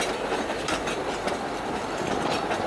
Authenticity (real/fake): real